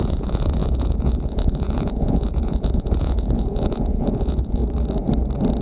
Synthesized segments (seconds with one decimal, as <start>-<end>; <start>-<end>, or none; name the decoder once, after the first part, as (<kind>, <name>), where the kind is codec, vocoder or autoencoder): 0.0-4.6 (vocoder, Vocos)